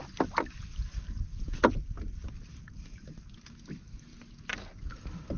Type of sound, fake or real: real